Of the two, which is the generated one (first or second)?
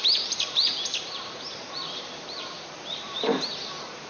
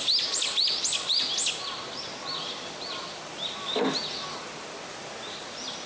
first